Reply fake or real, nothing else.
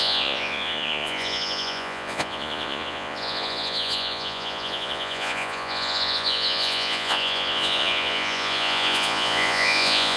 fake